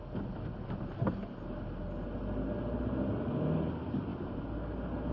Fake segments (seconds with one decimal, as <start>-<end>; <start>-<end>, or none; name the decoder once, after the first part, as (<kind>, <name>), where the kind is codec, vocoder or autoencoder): none